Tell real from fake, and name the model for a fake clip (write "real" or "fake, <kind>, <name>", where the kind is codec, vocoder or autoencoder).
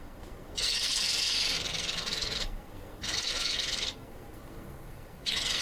fake, codec, SNAC